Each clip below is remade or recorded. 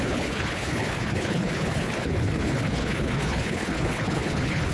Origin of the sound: remade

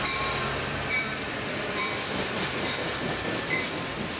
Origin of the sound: remade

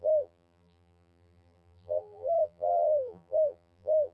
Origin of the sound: remade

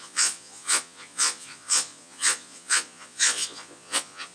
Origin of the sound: remade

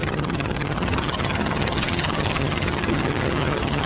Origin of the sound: remade